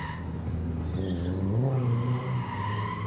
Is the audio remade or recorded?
recorded